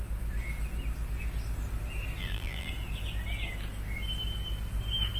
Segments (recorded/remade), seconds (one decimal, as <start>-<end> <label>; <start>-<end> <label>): 0.0-2.2 recorded; 2.2-2.7 remade; 2.7-5.2 recorded